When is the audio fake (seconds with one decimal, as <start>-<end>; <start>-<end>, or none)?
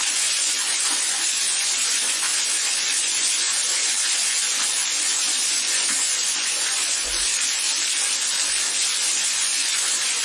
0.0-7.1; 8.8-10.2